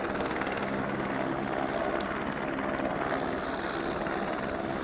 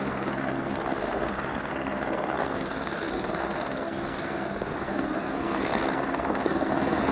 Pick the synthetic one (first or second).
second